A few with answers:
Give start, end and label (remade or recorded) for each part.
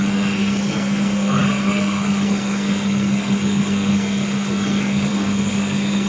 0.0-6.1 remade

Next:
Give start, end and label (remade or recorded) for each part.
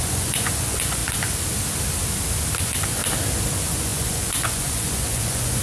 0.0-1.0 remade; 1.0-2.6 recorded; 2.6-3.0 remade; 3.0-3.5 recorded; 3.5-5.6 remade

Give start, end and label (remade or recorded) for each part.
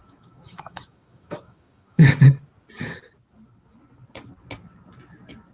0.0-2.1 remade; 2.1-5.5 recorded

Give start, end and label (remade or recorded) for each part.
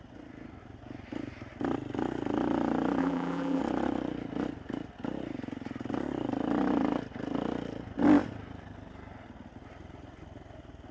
0.0-3.0 recorded; 3.0-3.6 remade; 3.6-10.9 recorded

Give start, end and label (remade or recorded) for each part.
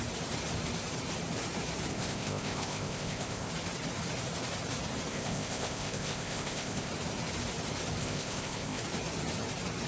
0.0-1.9 recorded; 1.9-3.5 remade; 3.5-5.1 recorded; 5.1-6.9 remade; 6.9-8.0 recorded; 8.0-8.8 remade; 8.8-9.9 recorded